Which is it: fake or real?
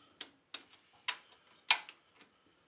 real